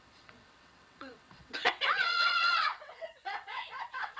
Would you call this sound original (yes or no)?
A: no